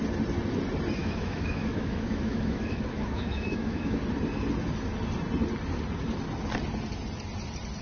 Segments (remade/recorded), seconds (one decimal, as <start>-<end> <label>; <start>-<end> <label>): 0.0-1.0 recorded; 1.0-4.0 remade; 4.0-7.8 recorded